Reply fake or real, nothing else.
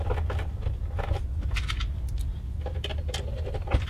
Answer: real